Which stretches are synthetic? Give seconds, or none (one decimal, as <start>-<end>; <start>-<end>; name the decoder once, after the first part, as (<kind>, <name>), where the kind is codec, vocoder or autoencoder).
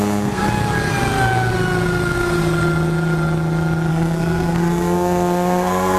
0.0-0.4 (codec, SNAC); 3.9-6.0